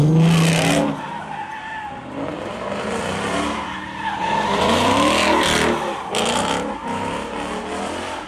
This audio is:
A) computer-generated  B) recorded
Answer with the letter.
B